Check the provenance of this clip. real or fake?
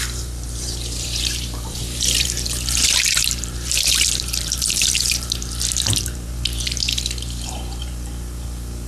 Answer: fake